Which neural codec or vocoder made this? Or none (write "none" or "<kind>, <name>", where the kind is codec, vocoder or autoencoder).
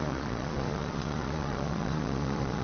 vocoder, Vocos